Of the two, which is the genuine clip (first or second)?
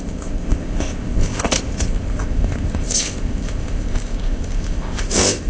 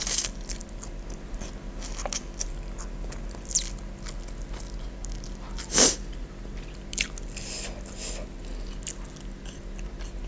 second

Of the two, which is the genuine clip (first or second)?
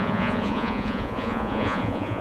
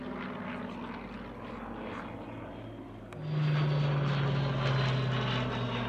second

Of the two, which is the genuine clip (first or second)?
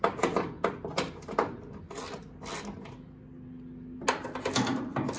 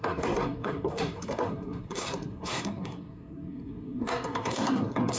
first